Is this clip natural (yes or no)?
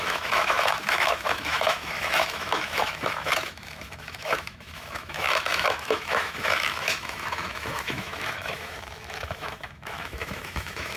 no